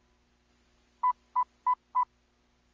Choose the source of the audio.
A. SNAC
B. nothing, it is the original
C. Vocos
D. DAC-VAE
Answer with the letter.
B